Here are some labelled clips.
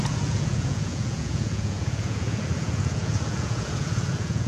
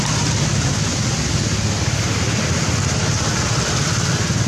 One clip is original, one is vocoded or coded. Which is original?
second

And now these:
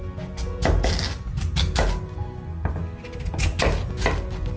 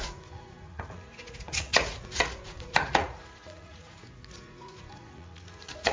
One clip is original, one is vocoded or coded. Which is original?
first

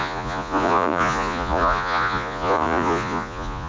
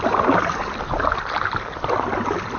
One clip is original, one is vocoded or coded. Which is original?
second